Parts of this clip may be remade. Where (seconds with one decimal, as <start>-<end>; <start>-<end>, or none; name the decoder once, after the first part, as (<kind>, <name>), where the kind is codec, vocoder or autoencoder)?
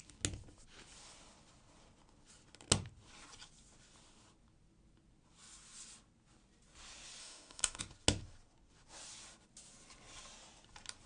7.2-7.8 (autoencoder, DAC-VAE)